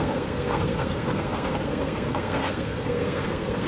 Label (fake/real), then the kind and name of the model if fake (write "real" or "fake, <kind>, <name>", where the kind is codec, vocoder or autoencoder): fake, codec, SNAC